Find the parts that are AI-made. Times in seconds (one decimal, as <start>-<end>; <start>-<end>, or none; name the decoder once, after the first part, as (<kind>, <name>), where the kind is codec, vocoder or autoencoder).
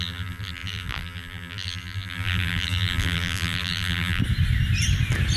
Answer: 0.0-4.2 (vocoder, BigVGAN v2)